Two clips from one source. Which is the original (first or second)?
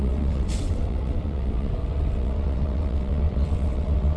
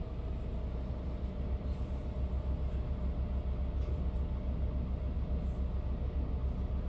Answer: second